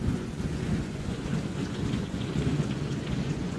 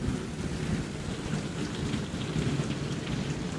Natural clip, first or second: second